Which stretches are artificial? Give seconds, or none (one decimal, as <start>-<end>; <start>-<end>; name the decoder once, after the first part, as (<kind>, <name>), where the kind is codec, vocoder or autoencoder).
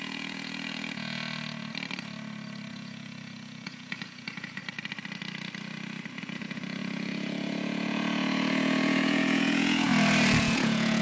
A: 0.0-1.2 (vocoder, Vocos); 2.7-4.6; 6.2-9.9; 10.4-11.0